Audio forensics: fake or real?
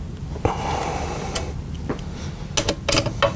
real